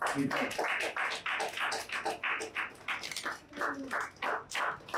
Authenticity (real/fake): real